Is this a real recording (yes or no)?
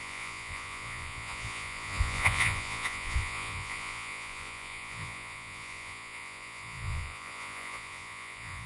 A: no